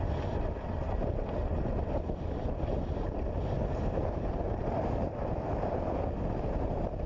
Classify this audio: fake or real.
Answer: real